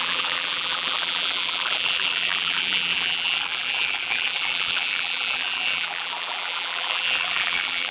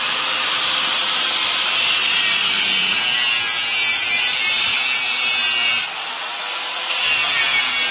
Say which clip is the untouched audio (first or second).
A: second